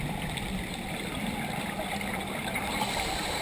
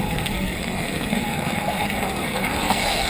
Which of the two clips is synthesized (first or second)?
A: second